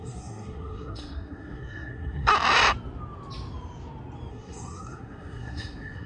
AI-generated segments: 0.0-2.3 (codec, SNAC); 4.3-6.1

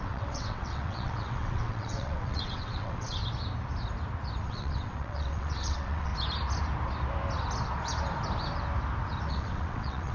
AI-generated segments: 0.0-3.2 (vocoder, WaveNeXt); 4.4-6.1; 9.3-10.1

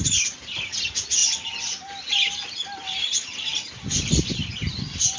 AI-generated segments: none

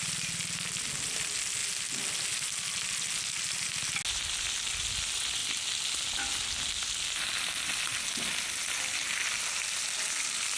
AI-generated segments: none

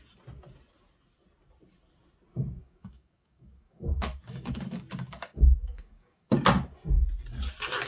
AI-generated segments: 2.6-6.4 (codec, DAC)

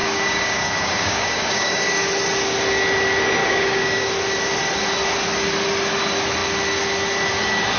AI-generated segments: 0.0-2.1 (codec, DAC); 3.4-4.1

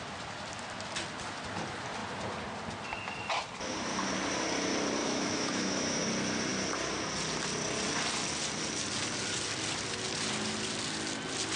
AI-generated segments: 5.0-6.0 (autoencoder, DAC-VAE)